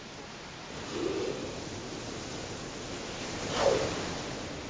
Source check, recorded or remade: recorded